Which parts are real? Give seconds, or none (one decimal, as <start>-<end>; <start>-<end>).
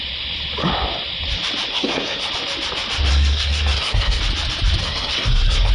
0.0-1.7; 2.3-3.1; 4.2-4.8